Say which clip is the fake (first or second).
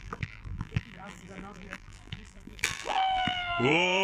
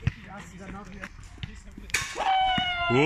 first